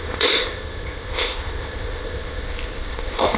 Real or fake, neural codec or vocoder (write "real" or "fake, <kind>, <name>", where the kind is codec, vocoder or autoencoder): fake, codec, ZipCodec